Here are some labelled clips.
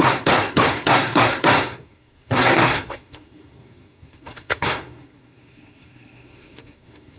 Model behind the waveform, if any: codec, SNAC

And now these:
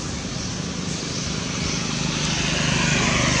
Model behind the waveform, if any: none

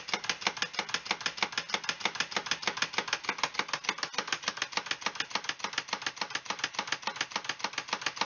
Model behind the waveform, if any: none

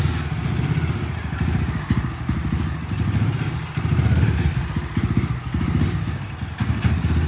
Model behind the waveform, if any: none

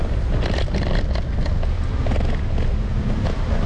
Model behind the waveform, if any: none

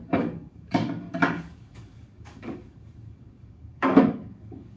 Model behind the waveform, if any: codec, DAC